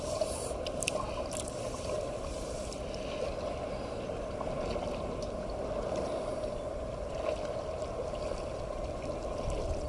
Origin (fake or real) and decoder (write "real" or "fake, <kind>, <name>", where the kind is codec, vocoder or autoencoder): real